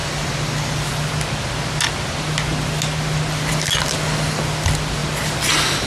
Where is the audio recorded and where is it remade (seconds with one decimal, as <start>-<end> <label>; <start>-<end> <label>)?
0.0-5.9 recorded

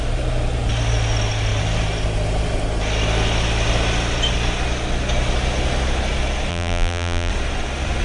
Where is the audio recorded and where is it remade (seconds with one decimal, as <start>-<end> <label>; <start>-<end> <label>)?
0.0-6.5 recorded; 6.5-7.3 remade; 7.3-8.0 recorded

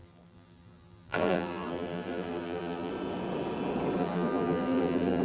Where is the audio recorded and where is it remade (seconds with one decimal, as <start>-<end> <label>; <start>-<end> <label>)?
0.0-2.9 remade; 2.9-4.0 recorded; 4.0-5.2 remade